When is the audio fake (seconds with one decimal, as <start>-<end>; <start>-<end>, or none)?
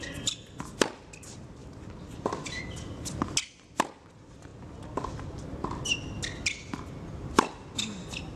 none